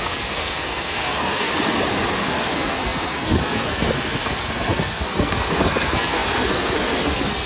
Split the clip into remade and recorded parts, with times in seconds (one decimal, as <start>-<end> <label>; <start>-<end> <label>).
0.0-1.5 remade; 1.5-2.1 recorded; 2.1-7.5 remade